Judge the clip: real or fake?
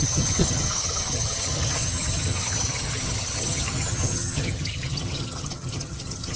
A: fake